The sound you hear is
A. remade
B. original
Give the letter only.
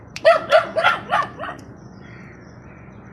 A